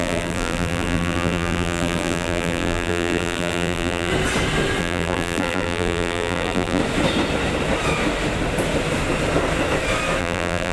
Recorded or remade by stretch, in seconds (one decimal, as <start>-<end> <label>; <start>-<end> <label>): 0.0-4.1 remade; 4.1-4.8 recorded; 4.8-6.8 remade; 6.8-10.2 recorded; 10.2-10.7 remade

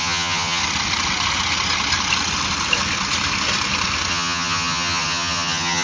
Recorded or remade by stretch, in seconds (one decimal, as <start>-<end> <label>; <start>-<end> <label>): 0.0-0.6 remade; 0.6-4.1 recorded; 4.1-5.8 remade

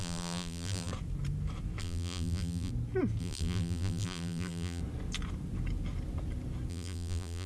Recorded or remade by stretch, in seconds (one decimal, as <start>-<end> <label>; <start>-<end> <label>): 0.0-0.9 remade; 0.9-1.8 recorded; 1.8-2.7 remade; 2.7-3.2 recorded; 3.2-4.8 remade; 4.8-6.7 recorded; 6.7-7.5 remade

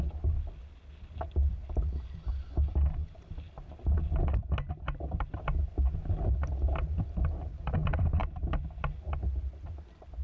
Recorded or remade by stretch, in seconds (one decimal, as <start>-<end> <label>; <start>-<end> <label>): 0.0-10.2 recorded